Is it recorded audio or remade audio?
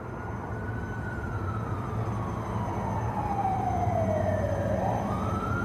recorded